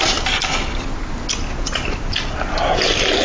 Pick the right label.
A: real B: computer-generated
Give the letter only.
A